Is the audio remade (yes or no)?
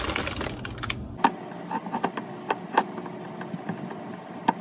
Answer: no